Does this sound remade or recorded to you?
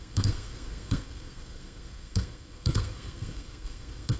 remade